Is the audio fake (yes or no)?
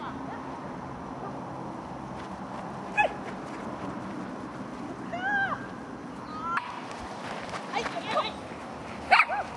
no